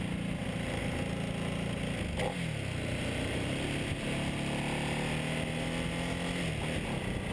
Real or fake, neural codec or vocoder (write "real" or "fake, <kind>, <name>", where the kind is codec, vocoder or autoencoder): real